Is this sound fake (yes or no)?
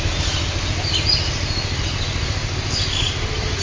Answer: no